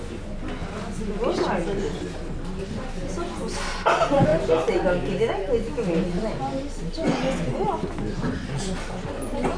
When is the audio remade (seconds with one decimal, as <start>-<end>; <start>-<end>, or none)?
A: none